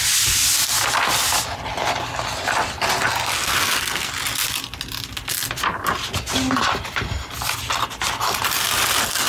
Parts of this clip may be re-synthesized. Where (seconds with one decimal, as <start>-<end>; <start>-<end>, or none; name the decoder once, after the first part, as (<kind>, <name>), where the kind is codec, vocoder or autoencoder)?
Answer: 3.6-4.1 (codec, SNAC)